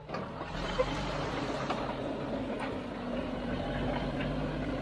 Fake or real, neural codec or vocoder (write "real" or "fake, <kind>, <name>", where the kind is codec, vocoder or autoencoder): fake, vocoder, BigVGAN v2